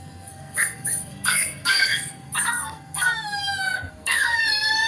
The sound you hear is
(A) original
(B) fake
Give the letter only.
B